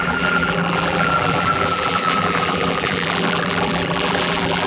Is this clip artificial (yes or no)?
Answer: yes